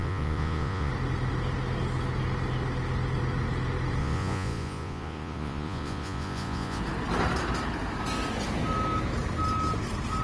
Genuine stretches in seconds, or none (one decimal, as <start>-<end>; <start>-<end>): 0.9-4.0; 6.8-10.2